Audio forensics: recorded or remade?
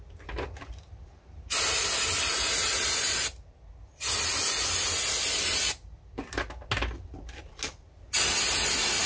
recorded